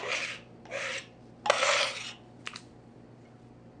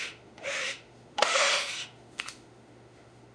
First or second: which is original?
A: first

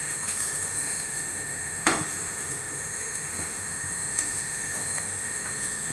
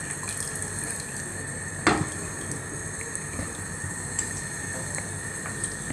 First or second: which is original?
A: second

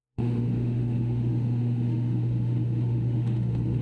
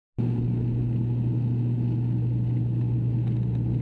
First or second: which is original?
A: second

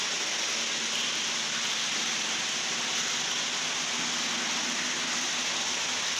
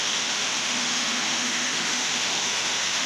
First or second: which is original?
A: first